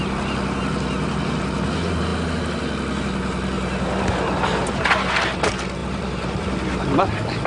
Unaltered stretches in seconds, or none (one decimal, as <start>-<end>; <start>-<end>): 0.0-5.8; 6.8-7.5